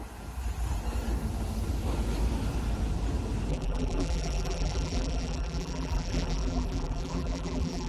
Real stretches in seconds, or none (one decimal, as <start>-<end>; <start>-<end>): 0.0-3.5